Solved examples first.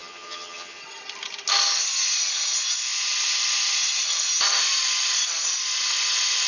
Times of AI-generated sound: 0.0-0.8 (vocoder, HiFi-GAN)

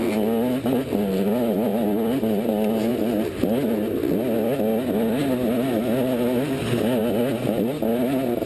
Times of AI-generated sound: none

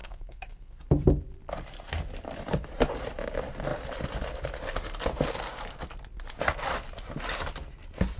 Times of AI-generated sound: 0.0-0.8 (codec, SNAC)

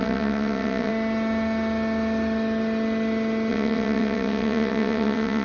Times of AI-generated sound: 0.0-0.9 (vocoder, WaveNeXt); 3.5-5.4

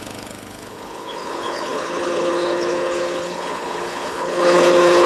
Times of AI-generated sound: 0.0-5.1 (codec, HILCodec)